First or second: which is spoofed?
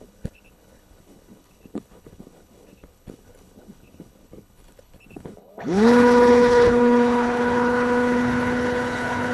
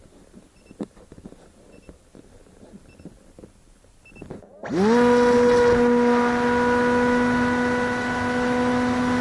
first